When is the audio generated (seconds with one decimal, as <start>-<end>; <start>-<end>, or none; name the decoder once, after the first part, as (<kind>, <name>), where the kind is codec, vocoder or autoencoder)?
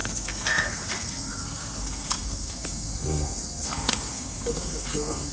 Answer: 0.0-5.3 (codec, SNAC)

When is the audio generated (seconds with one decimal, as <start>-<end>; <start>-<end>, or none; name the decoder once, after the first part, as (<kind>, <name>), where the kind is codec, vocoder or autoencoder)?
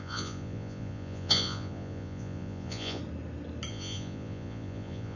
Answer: 0.0-3.0 (vocoder, Vocos); 3.7-5.2